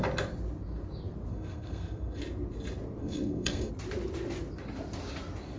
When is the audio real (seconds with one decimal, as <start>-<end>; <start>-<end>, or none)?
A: 0.0-1.3; 2.2-3.0; 3.7-5.6